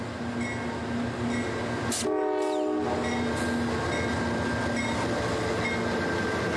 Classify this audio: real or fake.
real